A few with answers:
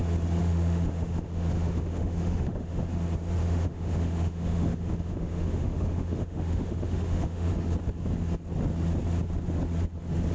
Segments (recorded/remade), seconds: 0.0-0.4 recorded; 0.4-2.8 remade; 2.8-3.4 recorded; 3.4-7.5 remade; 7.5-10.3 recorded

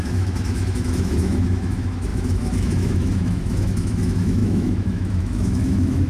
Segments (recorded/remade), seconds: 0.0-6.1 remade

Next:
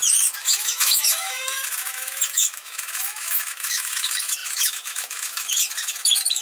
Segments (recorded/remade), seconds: 0.0-6.4 remade